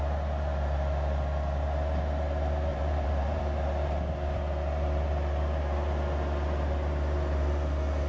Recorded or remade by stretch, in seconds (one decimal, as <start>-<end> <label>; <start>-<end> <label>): 0.0-2.7 recorded; 2.7-3.4 remade; 3.4-8.1 recorded